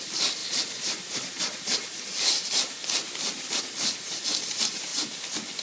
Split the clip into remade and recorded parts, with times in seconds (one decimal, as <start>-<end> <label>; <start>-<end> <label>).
0.0-0.4 recorded; 0.4-1.4 remade; 1.4-2.8 recorded; 2.8-3.6 remade; 3.6-4.9 recorded; 4.9-5.6 remade